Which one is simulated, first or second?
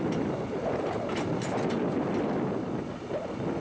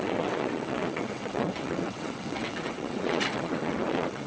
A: second